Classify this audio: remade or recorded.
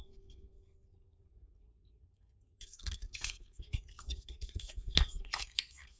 remade